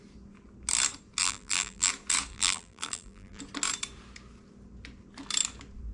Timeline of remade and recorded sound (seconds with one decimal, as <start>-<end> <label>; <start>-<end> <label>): 0.0-1.2 recorded; 1.2-1.9 remade; 1.9-2.3 recorded; 2.3-3.4 remade; 3.4-5.9 recorded